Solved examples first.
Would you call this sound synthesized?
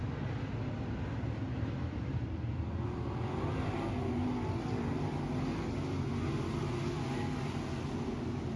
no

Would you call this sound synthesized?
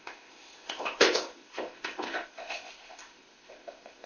yes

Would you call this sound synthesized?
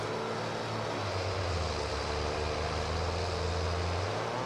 no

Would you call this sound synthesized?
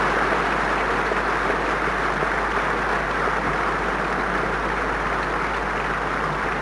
no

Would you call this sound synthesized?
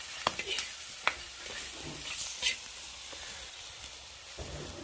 no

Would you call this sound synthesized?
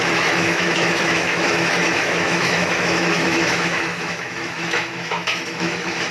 yes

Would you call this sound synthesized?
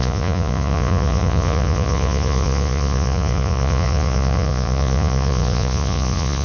yes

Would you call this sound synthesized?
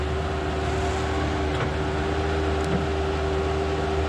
no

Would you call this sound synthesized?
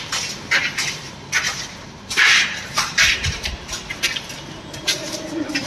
yes